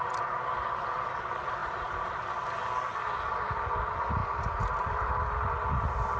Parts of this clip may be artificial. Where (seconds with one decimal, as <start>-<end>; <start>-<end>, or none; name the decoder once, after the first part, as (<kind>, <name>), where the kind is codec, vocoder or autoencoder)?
1.6-2.2 (vocoder, BigVGAN v2); 4.2-5.1